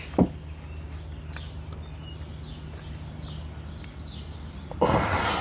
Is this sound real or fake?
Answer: real